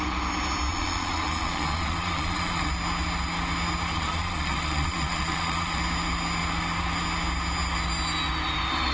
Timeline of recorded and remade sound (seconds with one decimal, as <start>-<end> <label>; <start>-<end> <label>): 0.0-0.7 recorded; 0.7-2.7 remade; 2.7-3.9 recorded; 3.9-5.8 remade; 5.8-8.9 recorded